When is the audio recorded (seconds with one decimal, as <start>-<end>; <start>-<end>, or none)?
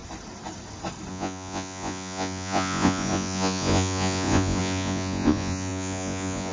0.0-1.1